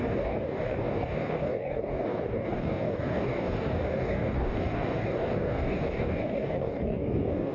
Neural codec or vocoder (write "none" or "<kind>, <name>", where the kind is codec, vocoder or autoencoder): codec, DAC